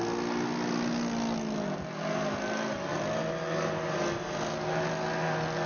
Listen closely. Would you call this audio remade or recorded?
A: recorded